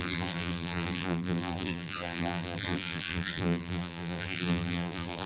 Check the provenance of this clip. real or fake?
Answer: fake